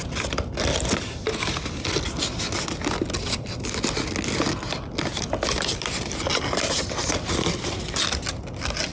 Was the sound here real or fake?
real